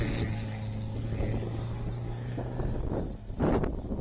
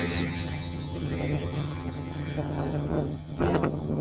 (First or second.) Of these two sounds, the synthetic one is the second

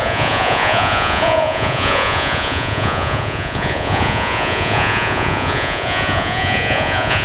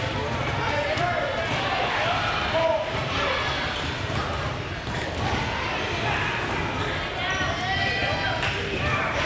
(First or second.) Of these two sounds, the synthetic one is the first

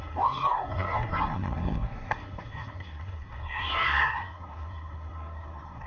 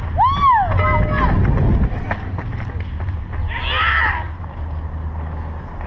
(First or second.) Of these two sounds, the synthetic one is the first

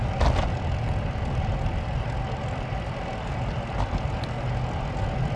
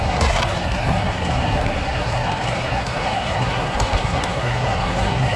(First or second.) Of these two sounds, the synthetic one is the second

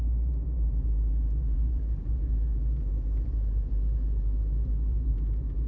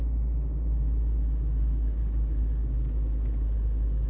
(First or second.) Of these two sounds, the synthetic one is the first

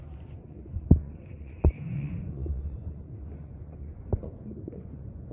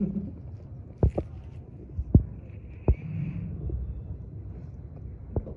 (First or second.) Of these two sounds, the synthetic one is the first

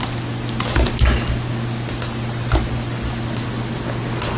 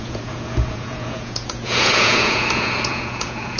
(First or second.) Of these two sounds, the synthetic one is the second